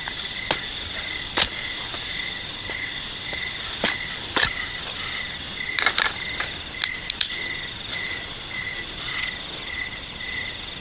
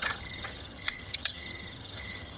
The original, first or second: first